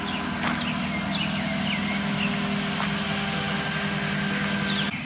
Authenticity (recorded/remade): recorded